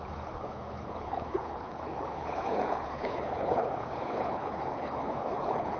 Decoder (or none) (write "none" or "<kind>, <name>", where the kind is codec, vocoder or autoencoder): codec, HILCodec